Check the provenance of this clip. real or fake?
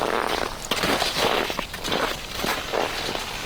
real